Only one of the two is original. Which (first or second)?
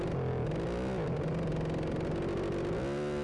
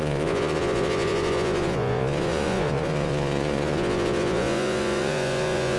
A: first